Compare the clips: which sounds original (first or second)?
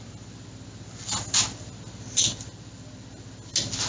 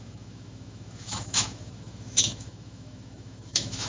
first